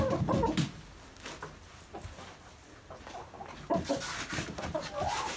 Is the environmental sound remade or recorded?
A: recorded